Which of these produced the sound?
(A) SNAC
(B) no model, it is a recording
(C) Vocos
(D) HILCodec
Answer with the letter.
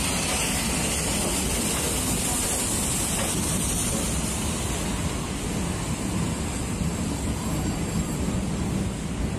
B